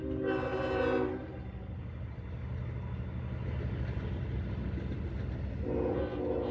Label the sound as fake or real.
real